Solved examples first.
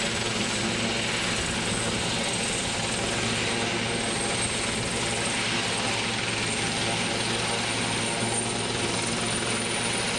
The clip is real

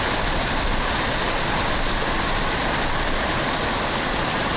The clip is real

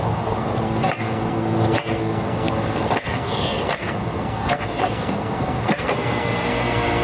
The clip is fake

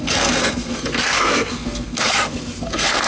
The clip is fake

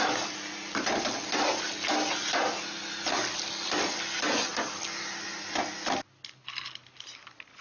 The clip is real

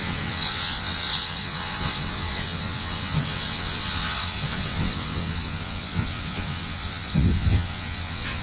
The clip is fake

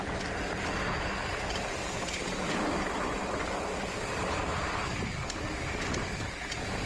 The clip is real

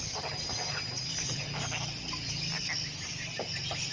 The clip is real